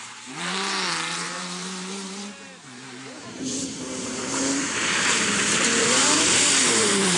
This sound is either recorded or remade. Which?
remade